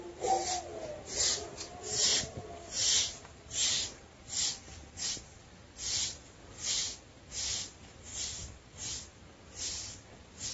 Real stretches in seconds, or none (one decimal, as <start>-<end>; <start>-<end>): 0.0-8.1; 8.6-10.5